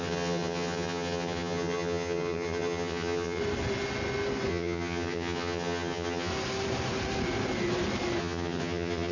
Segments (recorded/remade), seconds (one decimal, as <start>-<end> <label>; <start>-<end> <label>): 0.0-3.4 remade; 3.4-4.5 recorded; 4.5-6.3 remade; 6.3-8.2 recorded; 8.2-9.1 remade